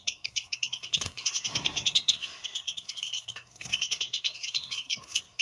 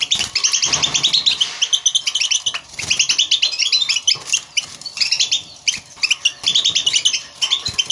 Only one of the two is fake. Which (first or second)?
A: first